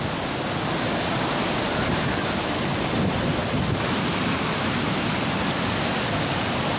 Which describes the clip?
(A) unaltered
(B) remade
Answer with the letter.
A